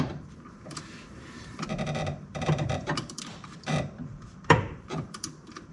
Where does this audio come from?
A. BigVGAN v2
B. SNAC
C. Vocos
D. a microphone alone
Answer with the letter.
A